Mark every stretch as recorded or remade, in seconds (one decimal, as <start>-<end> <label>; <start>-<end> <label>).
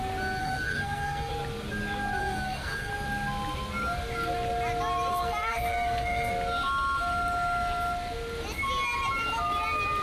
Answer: 0.0-0.4 recorded; 0.4-1.3 remade; 1.3-2.2 recorded; 2.2-2.9 remade; 2.9-5.1 recorded; 5.1-6.3 remade; 6.3-10.0 recorded